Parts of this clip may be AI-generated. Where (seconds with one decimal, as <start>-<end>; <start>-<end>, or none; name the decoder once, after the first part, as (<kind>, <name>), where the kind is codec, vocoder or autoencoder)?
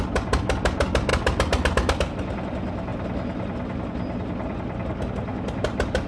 none